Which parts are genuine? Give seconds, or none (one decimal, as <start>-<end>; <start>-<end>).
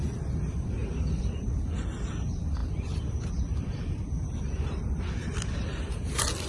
0.0-6.5